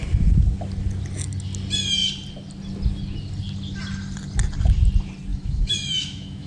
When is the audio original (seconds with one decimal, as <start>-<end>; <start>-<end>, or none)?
0.0-5.3

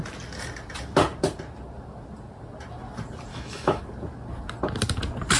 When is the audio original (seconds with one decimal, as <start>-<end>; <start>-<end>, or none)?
0.0-3.3; 3.8-5.4

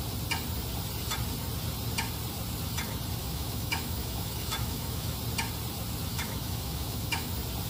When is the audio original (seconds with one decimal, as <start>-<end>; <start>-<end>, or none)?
0.0-3.2; 5.2-6.1; 7.3-7.7

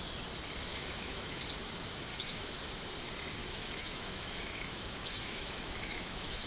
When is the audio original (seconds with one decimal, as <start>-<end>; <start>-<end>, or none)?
0.0-0.7; 1.4-2.1; 2.6-3.4